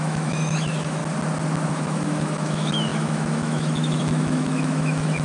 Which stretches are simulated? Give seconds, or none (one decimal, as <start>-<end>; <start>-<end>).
0.0-1.0; 1.7-5.2